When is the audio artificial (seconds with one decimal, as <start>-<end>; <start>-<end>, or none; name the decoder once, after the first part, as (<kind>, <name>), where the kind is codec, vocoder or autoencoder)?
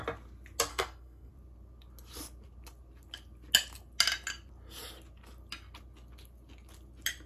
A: 0.7-1.3 (codec, SNAC)